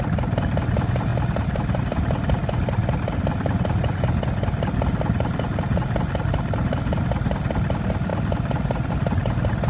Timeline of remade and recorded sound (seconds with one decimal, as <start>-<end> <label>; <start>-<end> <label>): 0.0-1.1 recorded; 1.1-1.8 remade; 1.8-9.7 recorded